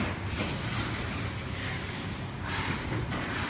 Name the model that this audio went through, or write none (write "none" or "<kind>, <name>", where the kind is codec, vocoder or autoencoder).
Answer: none